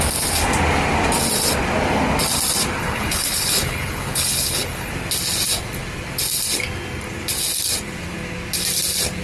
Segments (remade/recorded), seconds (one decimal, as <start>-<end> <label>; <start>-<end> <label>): 0.0-2.8 recorded; 2.8-4.9 remade; 4.9-9.2 recorded